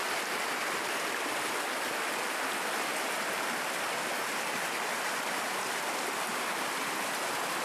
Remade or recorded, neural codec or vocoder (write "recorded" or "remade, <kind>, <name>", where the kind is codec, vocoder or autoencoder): recorded